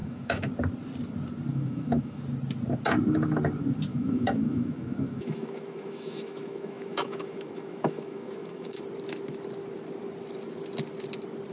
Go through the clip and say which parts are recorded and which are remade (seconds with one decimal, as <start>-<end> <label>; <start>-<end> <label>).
0.0-0.5 remade; 0.5-1.5 recorded; 1.5-2.2 remade; 2.2-3.9 recorded; 3.9-8.8 remade; 8.8-11.5 recorded